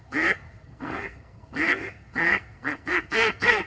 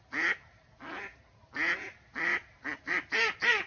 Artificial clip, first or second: first